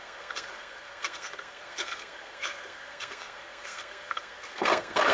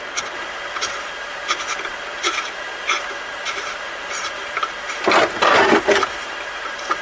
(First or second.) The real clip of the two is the second